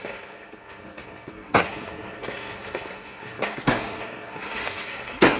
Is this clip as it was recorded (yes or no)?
no